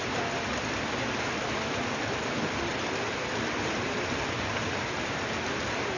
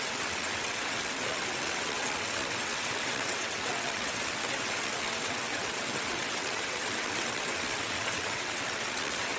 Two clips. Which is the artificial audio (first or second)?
second